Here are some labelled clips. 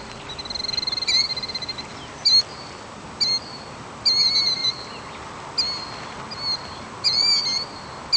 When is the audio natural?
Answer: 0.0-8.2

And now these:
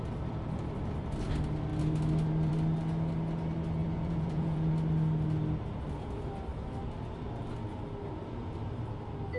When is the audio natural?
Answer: 0.0-3.8; 4.7-9.4

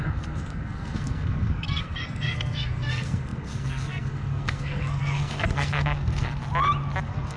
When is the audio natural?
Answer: 6.4-7.0

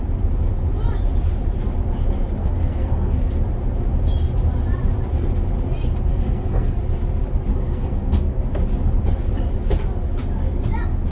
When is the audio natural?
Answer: 0.0-2.4; 3.4-6.1; 6.8-7.5; 8.5-11.1

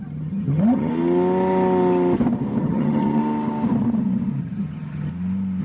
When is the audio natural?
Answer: 0.9-2.6; 3.2-4.4; 5.1-5.6

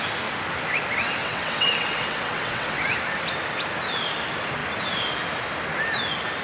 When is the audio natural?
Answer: 0.0-1.2; 2.8-6.4

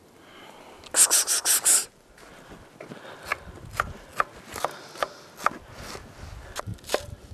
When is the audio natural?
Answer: 0.0-1.8; 2.3-7.3